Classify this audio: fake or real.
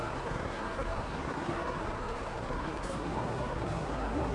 fake